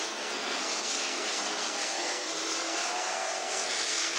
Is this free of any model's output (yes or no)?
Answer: no